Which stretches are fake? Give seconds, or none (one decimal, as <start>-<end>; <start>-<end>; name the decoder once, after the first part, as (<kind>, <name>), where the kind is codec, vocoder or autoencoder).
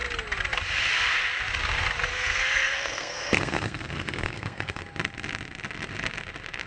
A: 2.1-4.8 (codec, SNAC)